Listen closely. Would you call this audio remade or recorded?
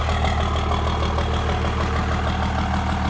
recorded